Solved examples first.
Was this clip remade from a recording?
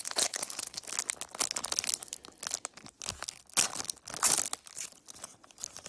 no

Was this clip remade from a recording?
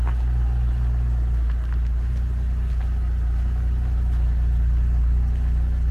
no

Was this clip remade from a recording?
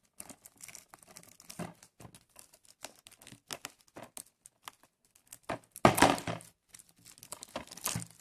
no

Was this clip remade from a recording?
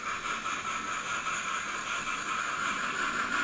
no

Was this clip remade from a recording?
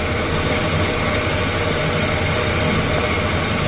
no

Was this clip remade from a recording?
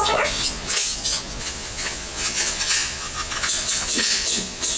yes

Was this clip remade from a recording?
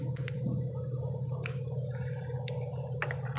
no